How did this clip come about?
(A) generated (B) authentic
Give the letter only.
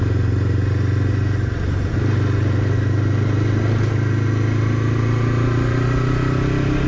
B